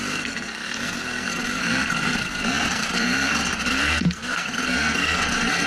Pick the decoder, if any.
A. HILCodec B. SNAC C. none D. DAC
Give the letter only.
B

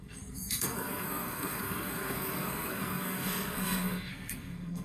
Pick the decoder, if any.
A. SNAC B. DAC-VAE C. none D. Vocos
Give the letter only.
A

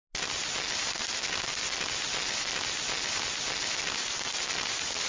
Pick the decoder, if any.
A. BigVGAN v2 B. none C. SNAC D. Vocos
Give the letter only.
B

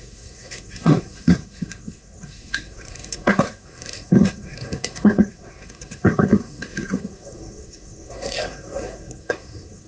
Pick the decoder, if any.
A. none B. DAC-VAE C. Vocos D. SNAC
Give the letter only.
D